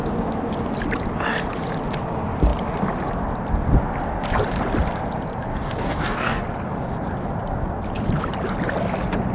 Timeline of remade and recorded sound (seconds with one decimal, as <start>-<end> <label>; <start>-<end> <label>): 0.0-5.5 recorded; 5.5-6.4 remade; 6.4-9.3 recorded